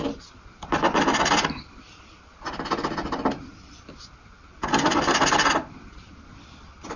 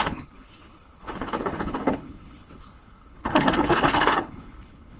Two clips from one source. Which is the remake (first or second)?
second